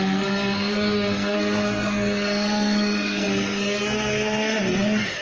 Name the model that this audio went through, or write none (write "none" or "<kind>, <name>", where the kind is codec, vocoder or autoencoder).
codec, SNAC